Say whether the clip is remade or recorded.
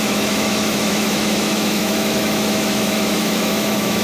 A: remade